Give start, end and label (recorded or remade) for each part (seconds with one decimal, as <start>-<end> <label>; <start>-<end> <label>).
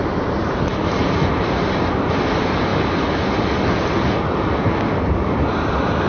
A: 0.0-0.7 remade; 0.7-1.3 recorded; 1.3-2.7 remade; 2.7-6.1 recorded